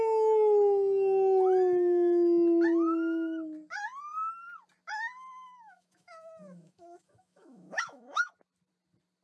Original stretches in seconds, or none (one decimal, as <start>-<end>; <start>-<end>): 0.0-5.3; 8.3-9.2